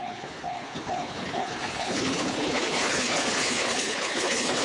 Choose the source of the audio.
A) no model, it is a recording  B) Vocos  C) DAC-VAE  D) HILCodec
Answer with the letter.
D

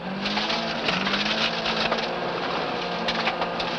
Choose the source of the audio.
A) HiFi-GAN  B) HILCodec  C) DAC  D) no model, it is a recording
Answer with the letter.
D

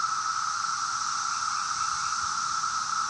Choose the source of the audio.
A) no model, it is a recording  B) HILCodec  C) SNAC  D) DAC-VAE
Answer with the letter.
A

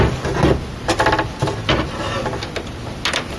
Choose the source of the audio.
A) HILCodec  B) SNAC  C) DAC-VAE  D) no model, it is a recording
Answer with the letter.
D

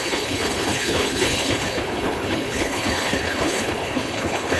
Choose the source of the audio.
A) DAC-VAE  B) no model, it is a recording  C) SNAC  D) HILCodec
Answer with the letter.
D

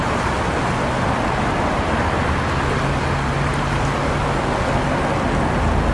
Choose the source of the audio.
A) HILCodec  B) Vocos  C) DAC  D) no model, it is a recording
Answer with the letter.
D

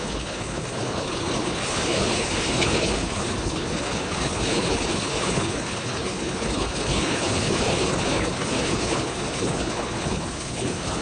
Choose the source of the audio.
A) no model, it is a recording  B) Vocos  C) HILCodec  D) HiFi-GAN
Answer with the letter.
C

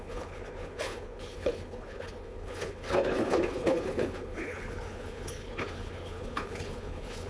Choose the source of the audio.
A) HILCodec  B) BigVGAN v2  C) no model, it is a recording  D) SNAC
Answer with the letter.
A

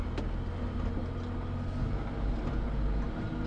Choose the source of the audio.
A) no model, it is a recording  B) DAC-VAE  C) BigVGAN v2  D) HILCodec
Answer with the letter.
A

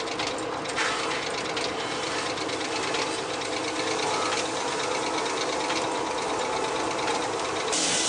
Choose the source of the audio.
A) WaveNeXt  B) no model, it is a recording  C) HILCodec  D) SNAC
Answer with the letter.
B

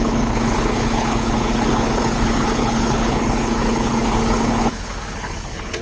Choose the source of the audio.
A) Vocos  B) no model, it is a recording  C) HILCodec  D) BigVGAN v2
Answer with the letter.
C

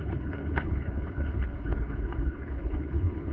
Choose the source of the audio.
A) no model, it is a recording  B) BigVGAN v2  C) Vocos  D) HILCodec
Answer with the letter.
D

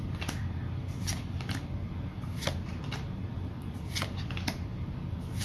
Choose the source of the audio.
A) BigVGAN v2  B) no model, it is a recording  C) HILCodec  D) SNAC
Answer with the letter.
B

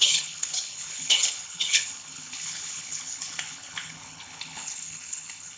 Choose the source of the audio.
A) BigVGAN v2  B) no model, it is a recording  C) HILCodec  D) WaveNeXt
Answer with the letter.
C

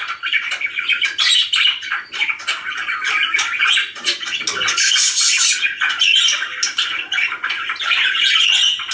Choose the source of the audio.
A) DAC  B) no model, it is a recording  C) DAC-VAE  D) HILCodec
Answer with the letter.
B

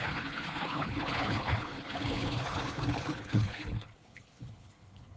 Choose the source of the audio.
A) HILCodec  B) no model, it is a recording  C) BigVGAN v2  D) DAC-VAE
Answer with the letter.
A